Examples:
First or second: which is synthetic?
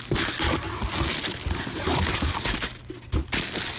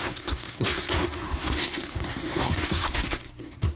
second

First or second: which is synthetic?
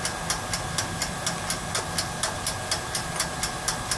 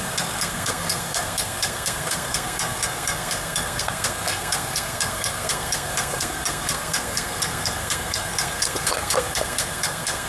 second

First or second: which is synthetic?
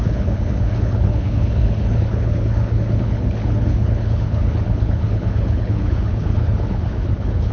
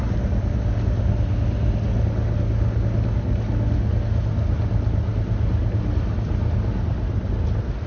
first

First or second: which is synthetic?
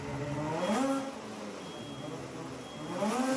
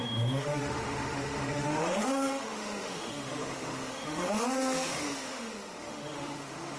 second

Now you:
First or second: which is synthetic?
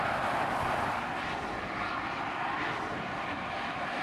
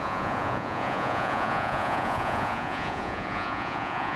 second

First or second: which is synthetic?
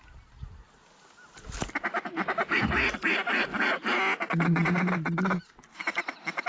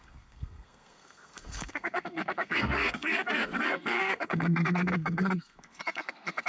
second